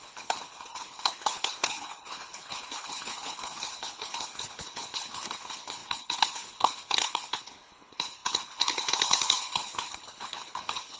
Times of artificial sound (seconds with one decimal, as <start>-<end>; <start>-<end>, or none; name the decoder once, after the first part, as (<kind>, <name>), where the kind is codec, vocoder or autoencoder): 0.0-11.0 (codec, HILCodec)